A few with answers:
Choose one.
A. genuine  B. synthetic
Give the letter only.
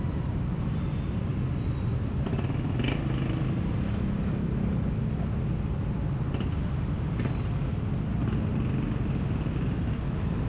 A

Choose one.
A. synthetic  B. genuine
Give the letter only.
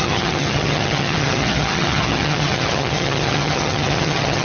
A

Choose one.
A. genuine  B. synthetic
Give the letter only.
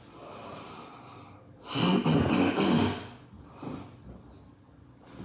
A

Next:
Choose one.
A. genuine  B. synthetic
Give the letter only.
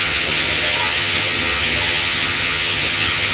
B